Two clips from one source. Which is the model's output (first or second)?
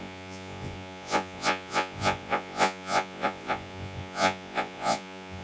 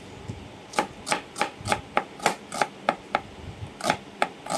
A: first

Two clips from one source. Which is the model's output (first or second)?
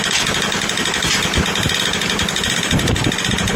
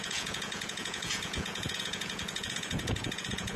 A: second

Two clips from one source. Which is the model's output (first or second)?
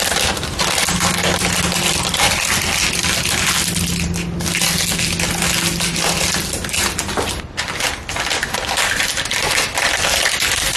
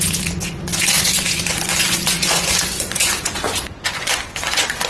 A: second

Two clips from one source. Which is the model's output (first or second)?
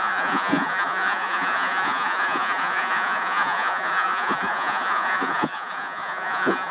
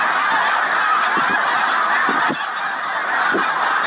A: first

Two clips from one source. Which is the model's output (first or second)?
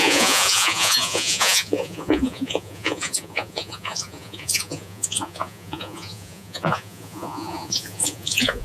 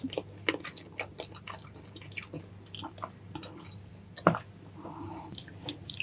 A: first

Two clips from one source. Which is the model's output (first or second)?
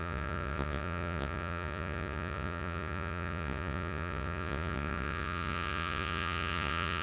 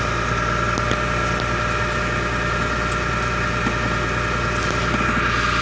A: first